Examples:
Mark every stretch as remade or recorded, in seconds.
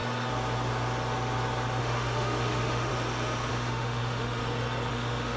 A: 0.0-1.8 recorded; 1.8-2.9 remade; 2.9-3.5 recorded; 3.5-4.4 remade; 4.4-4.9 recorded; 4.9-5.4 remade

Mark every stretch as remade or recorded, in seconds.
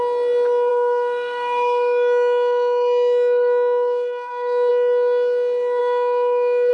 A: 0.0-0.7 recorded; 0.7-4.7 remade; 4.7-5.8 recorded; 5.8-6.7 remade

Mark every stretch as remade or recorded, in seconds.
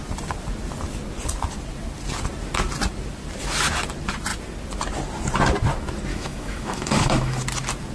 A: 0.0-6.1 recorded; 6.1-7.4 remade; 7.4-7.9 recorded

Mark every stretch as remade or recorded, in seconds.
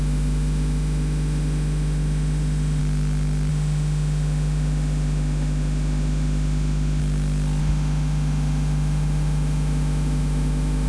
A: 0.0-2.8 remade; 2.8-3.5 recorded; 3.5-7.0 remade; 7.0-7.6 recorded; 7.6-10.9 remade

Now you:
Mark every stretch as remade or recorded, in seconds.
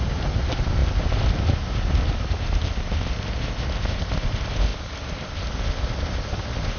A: 0.0-6.8 recorded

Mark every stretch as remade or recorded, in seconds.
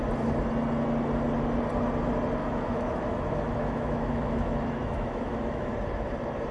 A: 0.0-2.4 recorded; 2.4-5.7 remade; 5.7-6.5 recorded